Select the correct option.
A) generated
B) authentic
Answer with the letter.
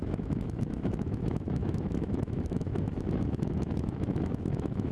A